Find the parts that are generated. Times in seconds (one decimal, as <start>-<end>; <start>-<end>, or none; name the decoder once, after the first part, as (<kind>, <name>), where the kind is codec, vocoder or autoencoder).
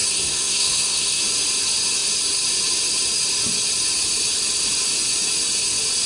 0.0-1.2 (codec, SNAC)